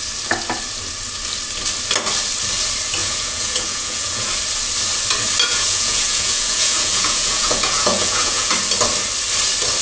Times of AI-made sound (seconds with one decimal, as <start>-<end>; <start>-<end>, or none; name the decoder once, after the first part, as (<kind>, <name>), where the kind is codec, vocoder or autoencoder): 3.0-4.3 (vocoder, Vocos); 5.5-8.5